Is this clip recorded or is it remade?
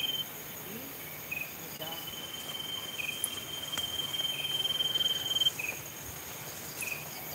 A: recorded